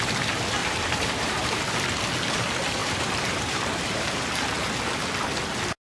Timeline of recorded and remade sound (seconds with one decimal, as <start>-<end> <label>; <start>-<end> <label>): 0.0-0.6 recorded; 0.6-1.6 remade; 1.6-2.8 recorded; 2.8-4.4 remade; 4.4-5.8 recorded